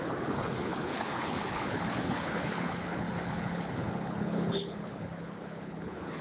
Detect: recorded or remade remade